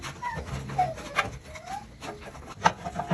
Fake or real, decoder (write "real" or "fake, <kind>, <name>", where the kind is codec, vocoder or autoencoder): real